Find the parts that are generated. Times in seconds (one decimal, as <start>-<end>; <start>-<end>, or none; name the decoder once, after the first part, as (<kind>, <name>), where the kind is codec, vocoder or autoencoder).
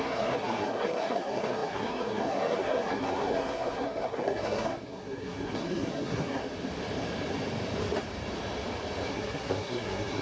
0.0-6.4 (codec, SNAC); 9.1-10.2